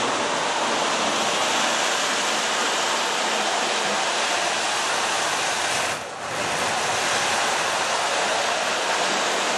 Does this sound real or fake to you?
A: real